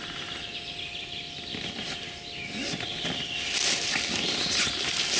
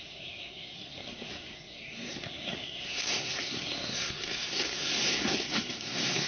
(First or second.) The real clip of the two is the first